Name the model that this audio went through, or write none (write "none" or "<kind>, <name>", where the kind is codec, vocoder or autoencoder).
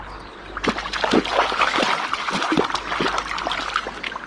none